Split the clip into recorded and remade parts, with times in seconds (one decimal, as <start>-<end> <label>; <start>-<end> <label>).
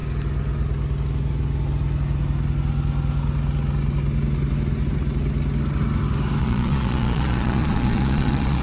0.0-6.4 recorded; 6.4-8.6 remade